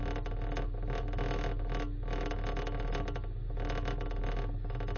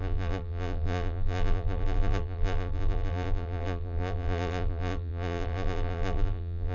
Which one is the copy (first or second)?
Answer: second